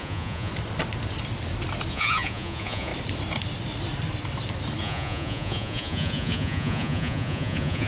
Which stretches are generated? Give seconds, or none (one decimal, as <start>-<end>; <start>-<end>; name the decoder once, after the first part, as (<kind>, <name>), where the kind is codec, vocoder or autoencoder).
0.0-0.5 (vocoder, Vocos); 1.9-2.9; 4.8-7.9